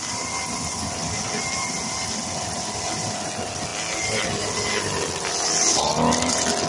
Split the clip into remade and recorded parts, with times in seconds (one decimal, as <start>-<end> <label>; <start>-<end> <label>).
0.0-3.7 recorded; 3.7-4.4 remade; 4.4-6.7 recorded